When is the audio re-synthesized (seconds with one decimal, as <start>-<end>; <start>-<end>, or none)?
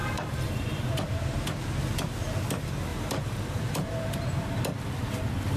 0.0-2.4; 2.9-4.5